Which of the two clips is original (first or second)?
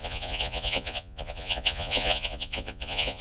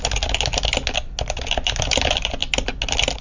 second